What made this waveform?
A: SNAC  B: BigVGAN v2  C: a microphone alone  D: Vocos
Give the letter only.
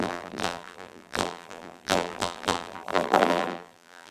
B